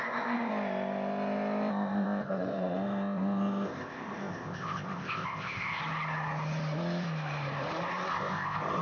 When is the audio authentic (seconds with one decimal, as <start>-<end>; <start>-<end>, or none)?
0.5-1.7; 5.8-8.1

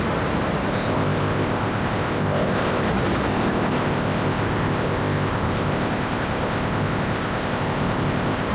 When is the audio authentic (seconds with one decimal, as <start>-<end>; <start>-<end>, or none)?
0.0-0.7; 2.9-3.3